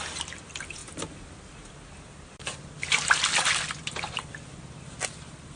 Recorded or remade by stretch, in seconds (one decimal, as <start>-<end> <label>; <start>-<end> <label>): 0.0-5.6 recorded